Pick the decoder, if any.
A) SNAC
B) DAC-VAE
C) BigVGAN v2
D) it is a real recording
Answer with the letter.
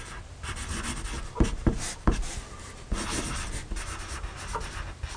D